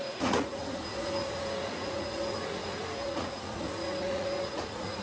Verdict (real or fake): fake